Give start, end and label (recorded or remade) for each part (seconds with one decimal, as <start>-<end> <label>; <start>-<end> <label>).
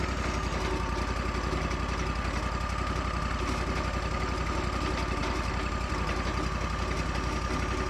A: 0.0-7.9 recorded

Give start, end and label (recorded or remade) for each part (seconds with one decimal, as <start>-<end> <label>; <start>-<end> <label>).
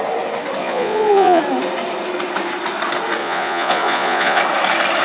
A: 0.0-0.6 recorded; 0.6-1.4 remade; 1.4-3.2 recorded; 3.2-4.4 remade; 4.4-5.0 recorded